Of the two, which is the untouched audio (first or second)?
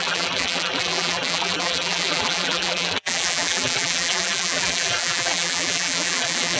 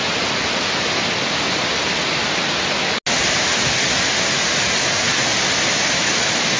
second